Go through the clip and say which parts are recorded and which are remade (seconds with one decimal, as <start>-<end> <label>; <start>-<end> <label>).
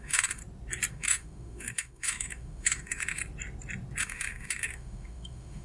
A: 0.0-0.4 remade; 0.4-0.9 recorded; 0.9-3.2 remade; 3.2-4.0 recorded; 4.0-5.6 remade